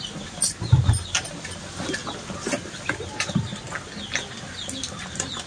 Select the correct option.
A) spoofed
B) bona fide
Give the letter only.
B